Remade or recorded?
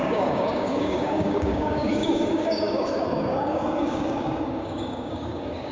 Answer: remade